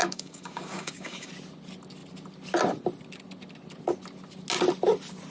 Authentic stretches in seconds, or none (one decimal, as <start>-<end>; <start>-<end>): 1.3-5.3